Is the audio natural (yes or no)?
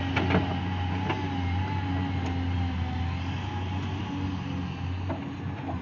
yes